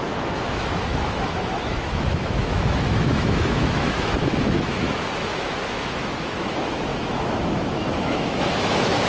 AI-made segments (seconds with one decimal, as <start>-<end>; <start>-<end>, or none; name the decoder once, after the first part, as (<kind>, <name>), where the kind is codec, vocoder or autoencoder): 0.0-9.1 (autoencoder, DAC-VAE)